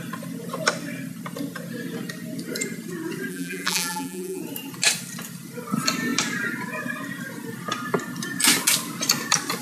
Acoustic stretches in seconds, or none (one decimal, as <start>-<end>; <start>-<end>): 0.0-3.3; 4.4-9.6